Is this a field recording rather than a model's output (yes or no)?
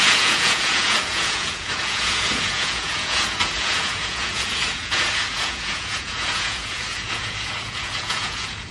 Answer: no